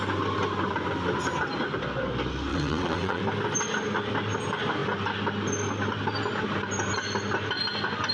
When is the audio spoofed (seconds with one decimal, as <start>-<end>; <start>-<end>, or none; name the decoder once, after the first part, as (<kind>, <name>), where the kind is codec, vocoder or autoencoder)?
2.5-3.2 (vocoder, WaveNeXt)